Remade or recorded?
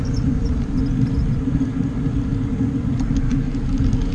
recorded